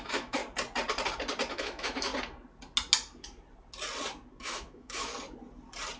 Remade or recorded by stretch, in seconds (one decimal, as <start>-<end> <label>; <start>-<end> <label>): 0.0-0.4 remade; 0.4-1.5 recorded; 1.5-2.1 remade; 2.1-4.4 recorded; 4.4-5.1 remade; 5.1-6.0 recorded

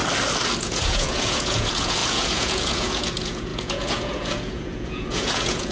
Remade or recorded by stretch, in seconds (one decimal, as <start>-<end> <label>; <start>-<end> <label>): 0.0-0.6 recorded; 0.6-5.7 remade

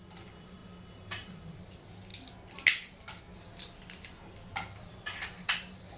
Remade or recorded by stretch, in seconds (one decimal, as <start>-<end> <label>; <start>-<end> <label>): 0.0-0.6 remade; 0.6-1.4 recorded; 1.4-2.1 remade; 2.1-3.2 recorded; 3.2-6.0 remade

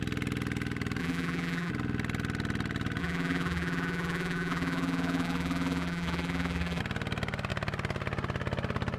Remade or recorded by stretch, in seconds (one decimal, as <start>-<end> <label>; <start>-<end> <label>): 0.0-1.0 recorded; 1.0-1.7 remade; 1.7-3.0 recorded; 3.0-6.8 remade; 6.8-9.0 recorded

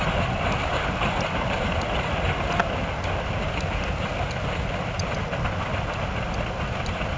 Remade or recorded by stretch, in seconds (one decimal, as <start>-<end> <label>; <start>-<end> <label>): 0.0-7.2 recorded

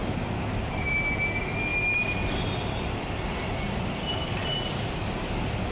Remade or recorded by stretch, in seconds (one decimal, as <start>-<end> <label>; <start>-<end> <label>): 0.0-1.1 remade; 1.1-1.7 recorded; 1.7-2.4 remade; 2.4-4.4 recorded; 4.4-4.9 remade; 4.9-5.7 recorded